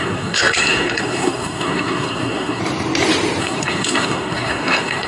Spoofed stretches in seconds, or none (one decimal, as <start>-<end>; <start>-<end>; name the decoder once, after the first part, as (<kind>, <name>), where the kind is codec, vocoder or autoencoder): 0.0-2.6 (codec, SNAC); 3.4-5.1